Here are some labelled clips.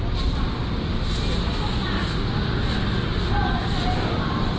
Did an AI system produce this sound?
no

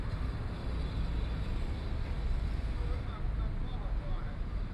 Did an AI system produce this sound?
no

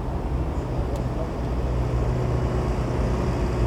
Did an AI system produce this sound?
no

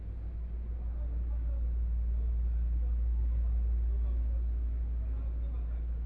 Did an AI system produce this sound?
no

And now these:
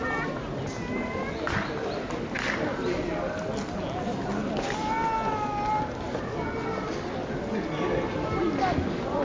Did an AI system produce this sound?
no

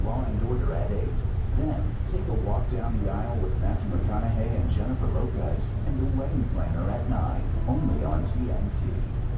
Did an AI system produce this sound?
no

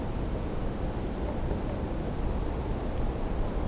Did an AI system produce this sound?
no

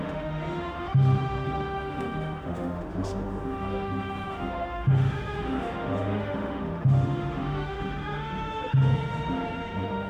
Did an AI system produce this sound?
yes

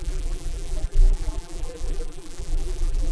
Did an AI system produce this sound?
yes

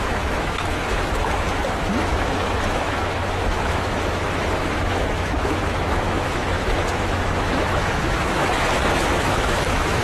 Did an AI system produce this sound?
yes